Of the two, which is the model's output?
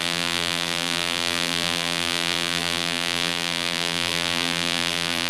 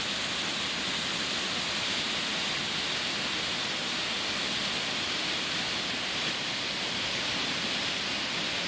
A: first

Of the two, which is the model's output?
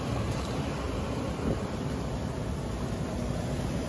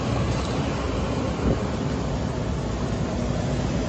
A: first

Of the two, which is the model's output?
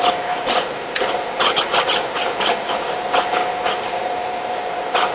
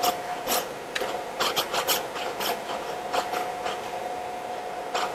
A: first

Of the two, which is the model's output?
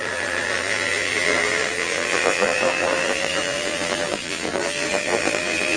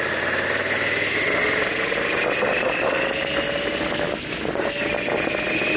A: first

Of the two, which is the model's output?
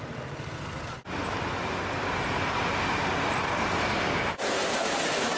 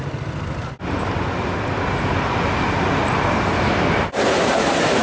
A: second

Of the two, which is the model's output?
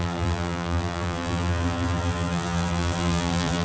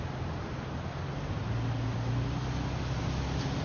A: first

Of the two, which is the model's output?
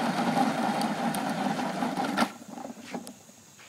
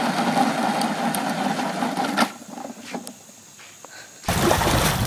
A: first